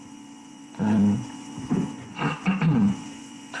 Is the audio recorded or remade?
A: remade